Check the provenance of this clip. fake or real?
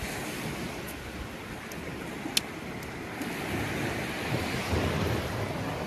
real